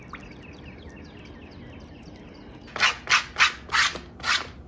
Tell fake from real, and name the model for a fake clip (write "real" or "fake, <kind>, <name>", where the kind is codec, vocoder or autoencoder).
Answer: real